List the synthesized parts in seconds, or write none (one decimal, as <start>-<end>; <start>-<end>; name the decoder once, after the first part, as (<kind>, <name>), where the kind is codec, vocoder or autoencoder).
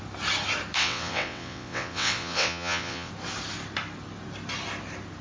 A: 0.8-3.1 (vocoder, WaveNeXt)